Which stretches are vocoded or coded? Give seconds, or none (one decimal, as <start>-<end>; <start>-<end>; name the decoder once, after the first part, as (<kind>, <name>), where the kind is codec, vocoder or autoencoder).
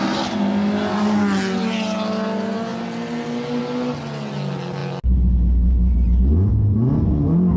none